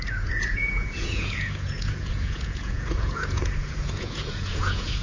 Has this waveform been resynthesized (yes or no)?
yes